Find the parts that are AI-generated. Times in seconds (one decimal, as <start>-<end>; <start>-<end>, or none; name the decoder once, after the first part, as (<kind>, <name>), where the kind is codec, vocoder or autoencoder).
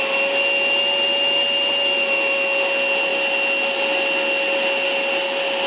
none